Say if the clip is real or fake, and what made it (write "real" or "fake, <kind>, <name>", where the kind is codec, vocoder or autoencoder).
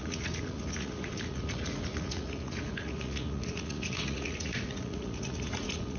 fake, vocoder, Vocos